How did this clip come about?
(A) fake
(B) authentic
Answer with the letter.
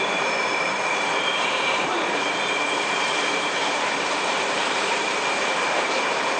A